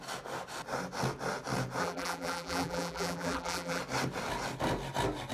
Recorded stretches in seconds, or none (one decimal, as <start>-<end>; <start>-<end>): 0.0-1.8; 3.8-5.3